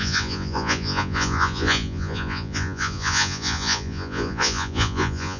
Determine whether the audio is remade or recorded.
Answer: remade